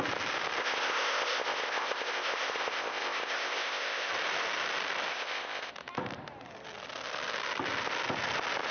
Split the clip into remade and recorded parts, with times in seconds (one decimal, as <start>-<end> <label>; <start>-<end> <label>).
0.0-0.6 recorded; 0.6-4.1 remade; 4.1-5.1 recorded; 5.1-5.7 remade; 5.7-8.7 recorded

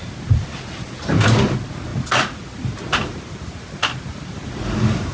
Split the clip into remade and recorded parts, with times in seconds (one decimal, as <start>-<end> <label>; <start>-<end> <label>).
0.0-5.1 recorded

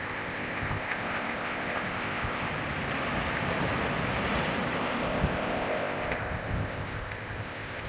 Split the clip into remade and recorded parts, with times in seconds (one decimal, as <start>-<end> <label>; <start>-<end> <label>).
0.0-2.5 remade; 2.5-4.8 recorded; 4.8-7.9 remade

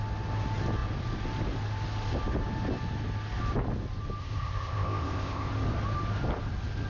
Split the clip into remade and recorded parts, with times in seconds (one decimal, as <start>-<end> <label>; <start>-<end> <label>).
0.0-4.2 recorded; 4.2-5.5 remade; 5.5-6.9 recorded

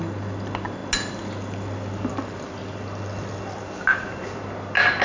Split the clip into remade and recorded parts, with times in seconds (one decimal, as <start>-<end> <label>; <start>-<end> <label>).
0.0-5.0 recorded